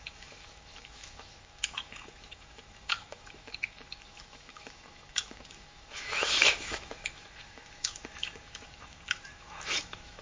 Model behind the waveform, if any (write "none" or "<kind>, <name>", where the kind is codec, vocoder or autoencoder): autoencoder, DAC-VAE